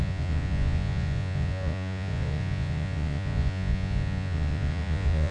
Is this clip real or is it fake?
fake